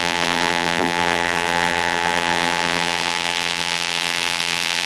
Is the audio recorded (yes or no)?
no